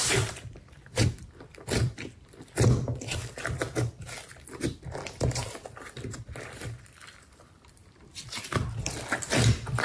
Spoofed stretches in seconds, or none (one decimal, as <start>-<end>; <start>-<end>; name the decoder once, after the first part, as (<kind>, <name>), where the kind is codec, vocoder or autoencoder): 0.0-3.2 (vocoder, BigVGAN v2); 4.3-7.8; 8.8-9.8